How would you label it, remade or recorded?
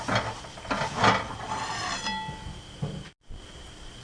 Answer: recorded